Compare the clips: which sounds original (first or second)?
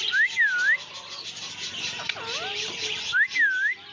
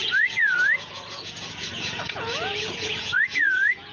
first